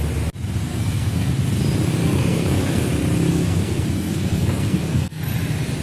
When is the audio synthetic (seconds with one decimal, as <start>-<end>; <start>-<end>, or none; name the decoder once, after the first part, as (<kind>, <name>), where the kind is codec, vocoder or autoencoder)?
0.7-1.3 (codec, SNAC); 2.0-2.9; 3.3-5.2